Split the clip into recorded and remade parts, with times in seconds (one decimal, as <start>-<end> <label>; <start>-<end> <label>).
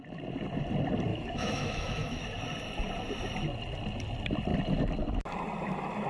0.0-1.1 recorded; 1.1-2.2 remade; 2.2-6.1 recorded